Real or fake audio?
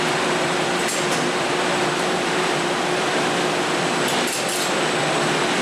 fake